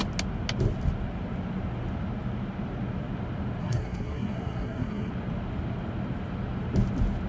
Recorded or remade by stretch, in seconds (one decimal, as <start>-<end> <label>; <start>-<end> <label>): 0.0-3.6 recorded; 3.6-5.1 remade; 5.1-7.3 recorded